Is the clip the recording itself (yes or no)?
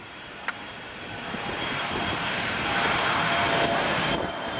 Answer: no